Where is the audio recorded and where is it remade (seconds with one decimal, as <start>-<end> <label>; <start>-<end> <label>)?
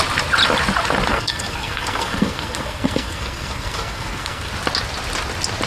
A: 0.0-1.1 recorded; 1.1-4.5 remade; 4.5-5.7 recorded